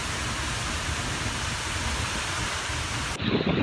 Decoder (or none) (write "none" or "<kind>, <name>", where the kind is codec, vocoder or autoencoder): none